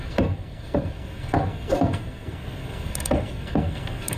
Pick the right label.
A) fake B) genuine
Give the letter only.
A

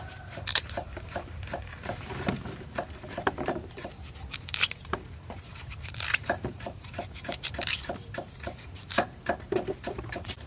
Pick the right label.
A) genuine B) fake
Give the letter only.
B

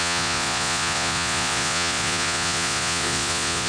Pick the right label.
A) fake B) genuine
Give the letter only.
A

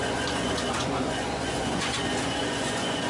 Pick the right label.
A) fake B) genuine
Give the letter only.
A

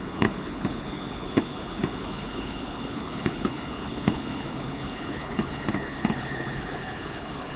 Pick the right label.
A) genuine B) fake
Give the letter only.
B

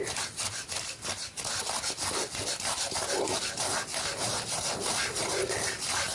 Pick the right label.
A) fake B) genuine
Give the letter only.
B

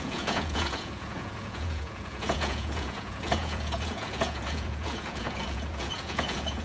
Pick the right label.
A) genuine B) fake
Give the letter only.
B